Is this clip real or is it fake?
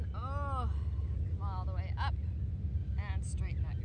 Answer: real